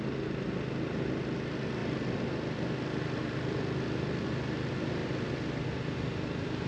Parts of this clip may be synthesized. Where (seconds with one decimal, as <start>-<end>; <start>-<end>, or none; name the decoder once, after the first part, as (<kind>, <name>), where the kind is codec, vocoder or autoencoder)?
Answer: none

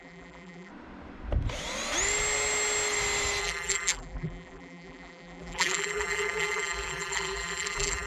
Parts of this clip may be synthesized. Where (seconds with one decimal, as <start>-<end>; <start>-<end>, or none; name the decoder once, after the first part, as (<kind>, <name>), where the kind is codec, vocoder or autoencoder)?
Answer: 0.0-0.7 (vocoder, BigVGAN v2); 3.4-8.1